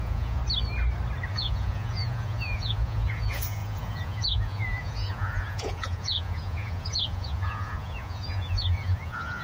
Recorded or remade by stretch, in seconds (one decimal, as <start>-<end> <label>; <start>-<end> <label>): 0.0-0.4 remade; 0.4-1.3 recorded; 1.3-9.4 remade